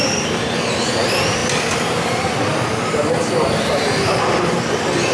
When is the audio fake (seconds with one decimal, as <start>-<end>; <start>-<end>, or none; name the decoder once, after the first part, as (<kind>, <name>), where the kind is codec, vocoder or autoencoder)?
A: none

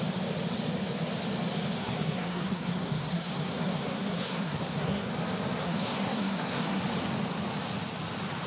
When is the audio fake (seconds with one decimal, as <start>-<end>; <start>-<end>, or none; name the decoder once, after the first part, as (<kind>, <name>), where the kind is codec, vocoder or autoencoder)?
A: 1.8-5.1 (codec, SNAC); 5.6-6.8

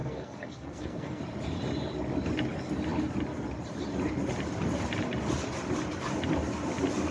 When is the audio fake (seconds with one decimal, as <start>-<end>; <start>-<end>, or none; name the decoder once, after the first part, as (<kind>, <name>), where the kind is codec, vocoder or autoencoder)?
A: 0.0-1.2 (codec, SNAC)